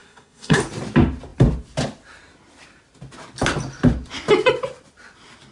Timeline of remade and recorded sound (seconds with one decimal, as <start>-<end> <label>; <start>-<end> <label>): 0.0-0.6 remade; 0.6-5.5 recorded